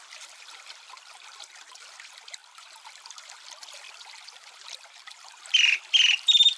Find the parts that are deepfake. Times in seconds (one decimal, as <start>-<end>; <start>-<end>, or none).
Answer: 0.0-6.6